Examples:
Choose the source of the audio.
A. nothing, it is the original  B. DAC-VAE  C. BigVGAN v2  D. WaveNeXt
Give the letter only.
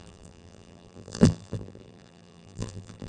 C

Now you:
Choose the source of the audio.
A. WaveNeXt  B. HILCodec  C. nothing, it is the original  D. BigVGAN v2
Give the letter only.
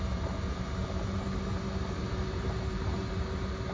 D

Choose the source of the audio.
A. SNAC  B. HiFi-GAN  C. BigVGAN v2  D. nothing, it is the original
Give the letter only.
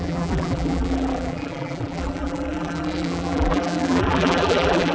C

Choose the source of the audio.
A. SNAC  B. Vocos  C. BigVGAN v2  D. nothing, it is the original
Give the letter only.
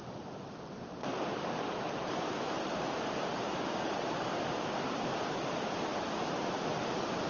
C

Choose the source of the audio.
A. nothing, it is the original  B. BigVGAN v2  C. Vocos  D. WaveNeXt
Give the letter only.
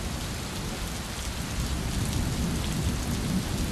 A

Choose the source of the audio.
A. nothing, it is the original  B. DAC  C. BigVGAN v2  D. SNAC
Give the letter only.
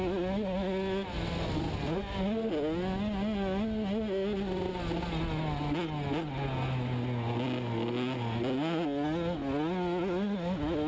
A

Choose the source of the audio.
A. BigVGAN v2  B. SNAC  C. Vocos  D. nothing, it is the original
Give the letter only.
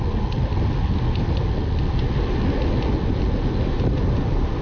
D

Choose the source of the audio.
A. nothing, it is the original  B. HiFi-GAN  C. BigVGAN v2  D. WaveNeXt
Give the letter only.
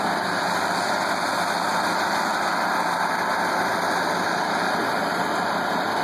A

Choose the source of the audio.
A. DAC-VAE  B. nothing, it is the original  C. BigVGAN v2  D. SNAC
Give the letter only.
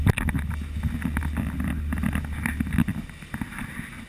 B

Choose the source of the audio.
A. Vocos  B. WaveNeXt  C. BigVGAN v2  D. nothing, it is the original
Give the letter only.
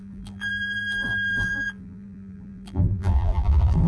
C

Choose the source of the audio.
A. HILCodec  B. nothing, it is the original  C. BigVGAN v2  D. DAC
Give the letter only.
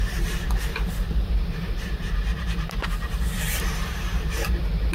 C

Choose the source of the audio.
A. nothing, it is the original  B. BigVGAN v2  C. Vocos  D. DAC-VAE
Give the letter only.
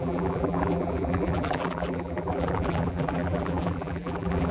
B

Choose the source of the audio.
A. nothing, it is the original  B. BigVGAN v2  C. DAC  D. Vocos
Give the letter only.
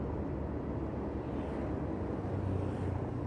A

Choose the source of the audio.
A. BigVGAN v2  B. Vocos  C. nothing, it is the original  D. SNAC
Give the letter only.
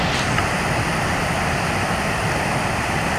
C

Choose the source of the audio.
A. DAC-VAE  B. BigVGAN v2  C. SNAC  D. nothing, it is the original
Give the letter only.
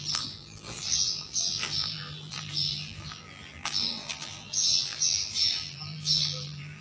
B